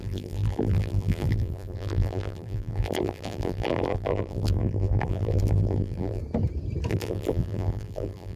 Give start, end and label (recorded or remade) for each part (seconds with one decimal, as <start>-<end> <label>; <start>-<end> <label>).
0.0-6.2 remade; 6.2-6.9 recorded; 6.9-8.4 remade